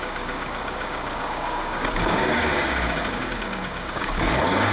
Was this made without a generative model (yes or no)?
no